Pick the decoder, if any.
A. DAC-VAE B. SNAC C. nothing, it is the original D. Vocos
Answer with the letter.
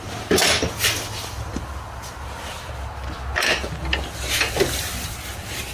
C